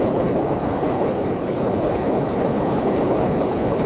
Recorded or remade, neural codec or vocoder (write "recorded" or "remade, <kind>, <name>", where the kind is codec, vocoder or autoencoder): remade, codec, HILCodec